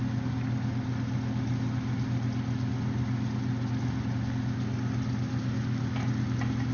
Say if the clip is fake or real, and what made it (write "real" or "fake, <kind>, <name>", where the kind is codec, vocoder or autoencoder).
real